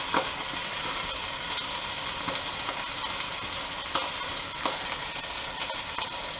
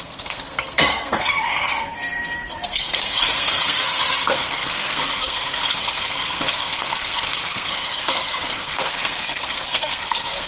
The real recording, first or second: first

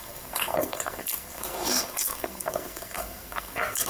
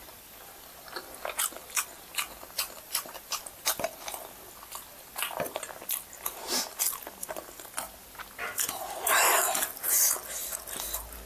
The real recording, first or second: second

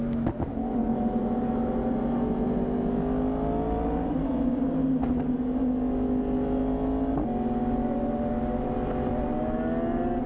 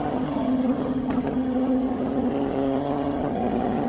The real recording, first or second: first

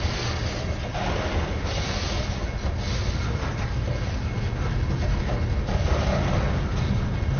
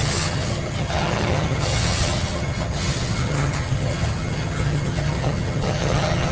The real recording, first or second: first